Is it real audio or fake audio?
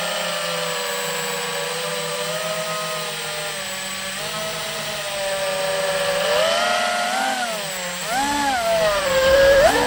real